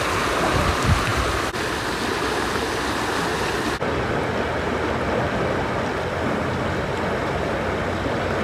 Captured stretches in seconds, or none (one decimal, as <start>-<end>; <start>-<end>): 0.0-8.4